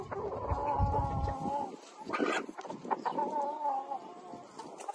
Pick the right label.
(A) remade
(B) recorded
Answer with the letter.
B